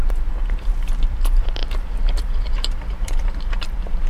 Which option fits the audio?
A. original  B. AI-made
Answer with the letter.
B